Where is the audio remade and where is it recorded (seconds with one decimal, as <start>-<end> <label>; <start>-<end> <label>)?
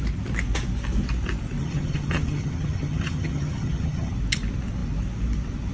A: 0.0-1.6 recorded; 1.6-4.1 remade; 4.1-5.7 recorded